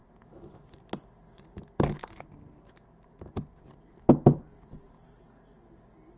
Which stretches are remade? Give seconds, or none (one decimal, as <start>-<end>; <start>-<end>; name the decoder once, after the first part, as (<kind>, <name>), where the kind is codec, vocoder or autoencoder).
none